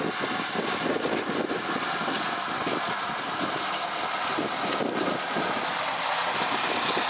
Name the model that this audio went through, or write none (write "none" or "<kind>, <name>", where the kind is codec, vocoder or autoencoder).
none